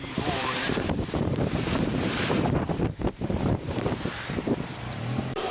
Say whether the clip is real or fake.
fake